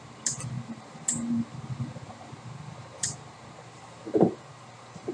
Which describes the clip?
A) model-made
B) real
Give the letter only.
A